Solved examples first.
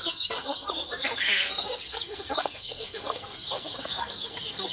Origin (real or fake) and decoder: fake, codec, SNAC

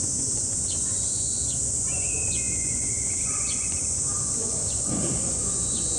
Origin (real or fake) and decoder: fake, vocoder, Vocos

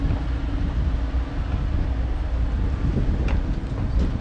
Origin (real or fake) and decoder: real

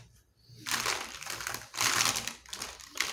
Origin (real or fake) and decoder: real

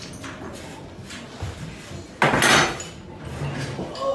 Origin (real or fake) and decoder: real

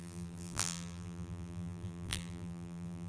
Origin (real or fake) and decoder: fake, vocoder, BigVGAN v2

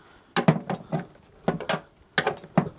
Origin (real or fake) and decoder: real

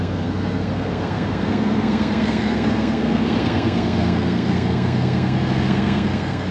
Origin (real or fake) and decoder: fake, codec, SNAC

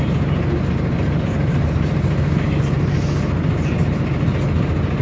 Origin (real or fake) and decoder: real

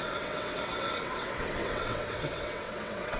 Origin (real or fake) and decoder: fake, vocoder, WaveNeXt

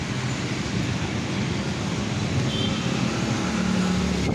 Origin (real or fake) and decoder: real